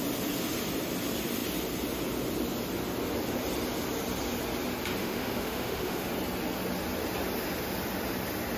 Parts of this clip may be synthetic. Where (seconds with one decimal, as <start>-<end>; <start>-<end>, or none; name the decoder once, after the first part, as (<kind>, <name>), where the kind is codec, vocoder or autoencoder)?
5.0-6.1 (autoencoder, DAC-VAE)